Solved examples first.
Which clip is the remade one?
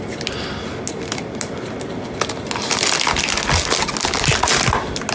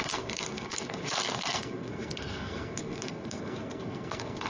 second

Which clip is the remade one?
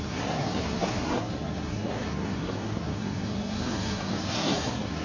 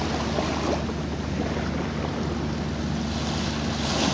first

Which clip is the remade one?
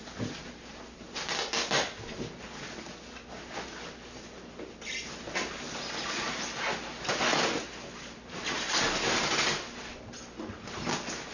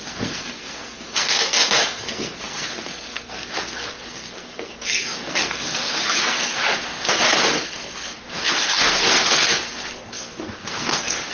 second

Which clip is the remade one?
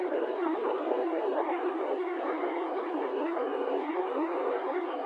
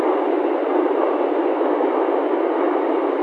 first